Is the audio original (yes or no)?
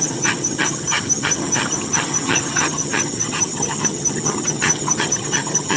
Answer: no